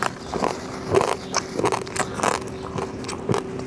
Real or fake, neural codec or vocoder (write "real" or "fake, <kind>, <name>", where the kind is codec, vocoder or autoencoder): real